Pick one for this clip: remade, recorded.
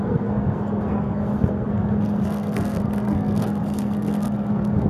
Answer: remade